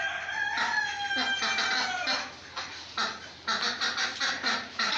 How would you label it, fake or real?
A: real